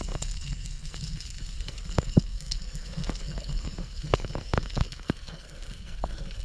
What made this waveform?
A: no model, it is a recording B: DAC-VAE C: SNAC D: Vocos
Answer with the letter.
C